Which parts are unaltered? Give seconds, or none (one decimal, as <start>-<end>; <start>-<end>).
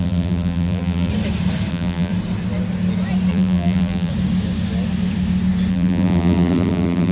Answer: 1.1-1.7; 2.1-3.3; 4.1-5.7